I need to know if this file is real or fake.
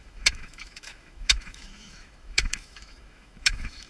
fake